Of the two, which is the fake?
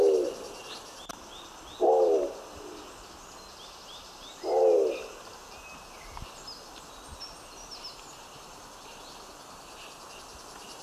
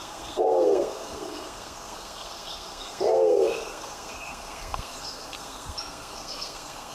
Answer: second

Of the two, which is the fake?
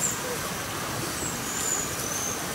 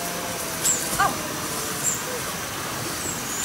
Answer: first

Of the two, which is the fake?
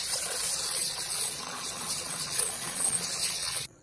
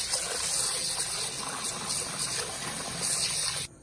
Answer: first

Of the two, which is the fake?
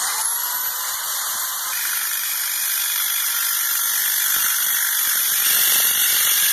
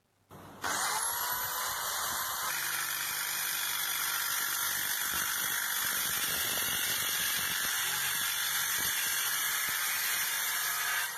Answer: first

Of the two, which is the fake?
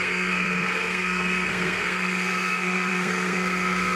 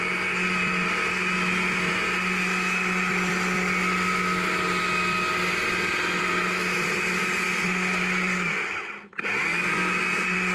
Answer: first